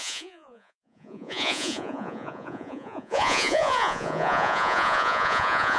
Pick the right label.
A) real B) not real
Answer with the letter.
B